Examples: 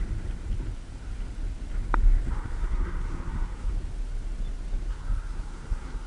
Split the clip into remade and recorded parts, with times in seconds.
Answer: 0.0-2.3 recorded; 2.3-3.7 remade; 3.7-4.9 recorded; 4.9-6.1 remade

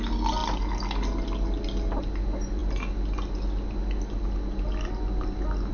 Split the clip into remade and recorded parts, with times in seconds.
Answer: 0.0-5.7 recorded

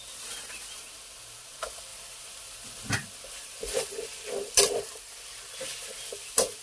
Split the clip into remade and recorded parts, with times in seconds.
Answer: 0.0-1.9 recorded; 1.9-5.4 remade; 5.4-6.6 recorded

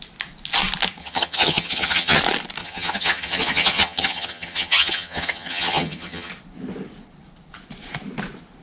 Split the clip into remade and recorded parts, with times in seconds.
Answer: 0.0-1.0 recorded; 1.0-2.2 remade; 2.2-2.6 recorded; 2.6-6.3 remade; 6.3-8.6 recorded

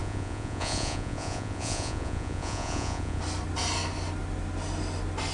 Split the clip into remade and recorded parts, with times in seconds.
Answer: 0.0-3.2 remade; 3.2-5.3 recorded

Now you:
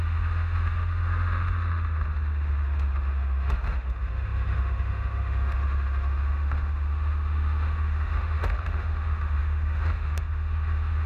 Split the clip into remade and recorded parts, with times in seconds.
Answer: 0.0-11.1 remade

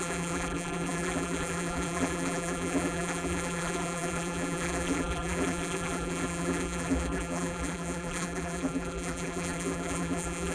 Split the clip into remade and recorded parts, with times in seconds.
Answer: 0.0-10.5 remade

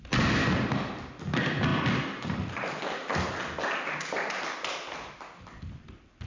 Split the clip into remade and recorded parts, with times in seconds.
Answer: 0.0-6.3 recorded